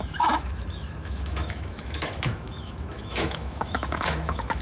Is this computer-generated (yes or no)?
yes